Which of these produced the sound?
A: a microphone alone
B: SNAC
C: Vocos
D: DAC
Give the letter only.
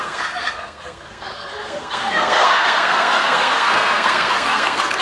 B